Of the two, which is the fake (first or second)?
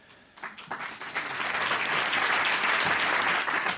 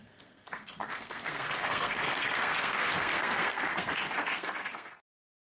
second